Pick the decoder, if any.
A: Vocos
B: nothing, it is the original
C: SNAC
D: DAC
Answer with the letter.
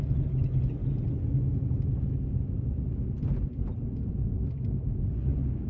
B